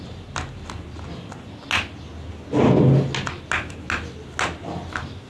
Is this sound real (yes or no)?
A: yes